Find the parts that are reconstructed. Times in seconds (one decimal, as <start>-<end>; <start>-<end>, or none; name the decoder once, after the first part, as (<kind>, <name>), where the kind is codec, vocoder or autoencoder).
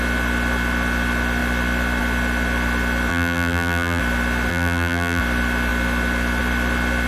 3.1-4.0 (vocoder, BigVGAN v2); 4.5-5.2